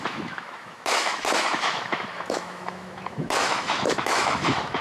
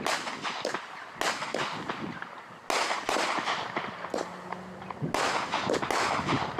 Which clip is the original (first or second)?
second